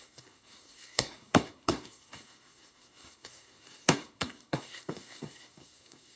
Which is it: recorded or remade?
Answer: remade